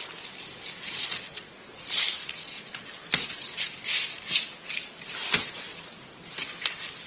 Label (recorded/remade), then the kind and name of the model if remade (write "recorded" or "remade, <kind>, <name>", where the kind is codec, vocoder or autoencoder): recorded